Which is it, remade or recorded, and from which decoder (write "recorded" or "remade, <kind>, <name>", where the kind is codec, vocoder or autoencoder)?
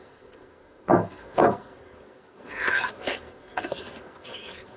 remade, codec, SNAC